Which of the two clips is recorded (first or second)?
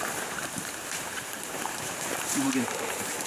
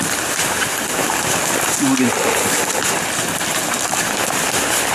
second